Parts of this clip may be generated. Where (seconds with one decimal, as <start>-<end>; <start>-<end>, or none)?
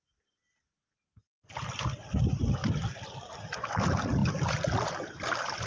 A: none